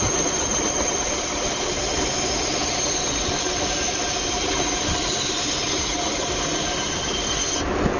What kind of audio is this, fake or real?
real